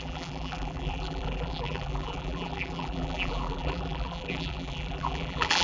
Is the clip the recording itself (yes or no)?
no